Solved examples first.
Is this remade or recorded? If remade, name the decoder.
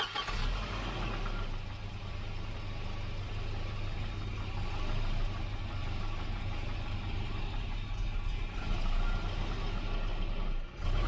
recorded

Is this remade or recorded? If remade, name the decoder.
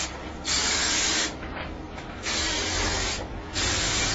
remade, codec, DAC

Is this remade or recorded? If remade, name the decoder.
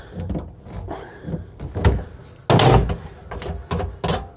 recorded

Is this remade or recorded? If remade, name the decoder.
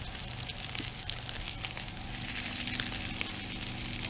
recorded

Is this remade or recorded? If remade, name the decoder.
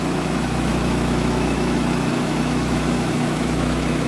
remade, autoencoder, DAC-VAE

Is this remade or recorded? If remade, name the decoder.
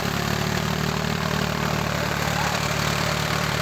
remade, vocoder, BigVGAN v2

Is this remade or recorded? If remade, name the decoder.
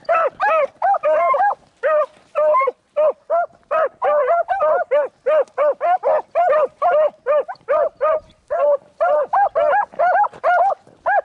recorded